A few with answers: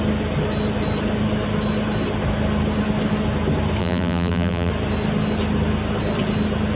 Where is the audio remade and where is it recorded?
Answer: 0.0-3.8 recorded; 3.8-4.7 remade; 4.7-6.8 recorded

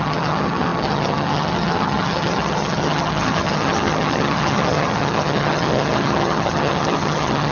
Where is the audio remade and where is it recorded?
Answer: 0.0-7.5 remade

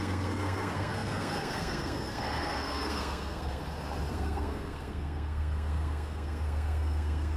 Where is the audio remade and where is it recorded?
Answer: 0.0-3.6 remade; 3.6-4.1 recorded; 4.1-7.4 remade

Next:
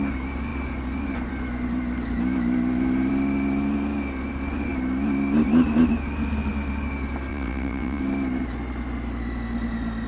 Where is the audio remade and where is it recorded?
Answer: 0.0-7.3 recorded; 7.3-8.0 remade; 8.0-10.1 recorded

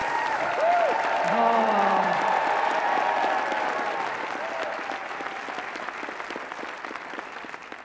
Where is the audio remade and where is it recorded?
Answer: 0.0-2.5 remade; 2.5-7.8 recorded

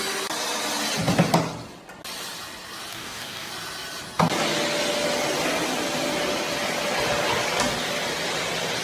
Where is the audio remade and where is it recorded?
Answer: 0.0-2.9 recorded; 2.9-3.5 remade; 3.5-8.8 recorded

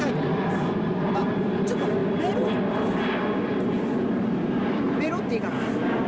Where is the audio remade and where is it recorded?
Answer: 0.0-6.1 recorded